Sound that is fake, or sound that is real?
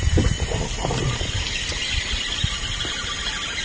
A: real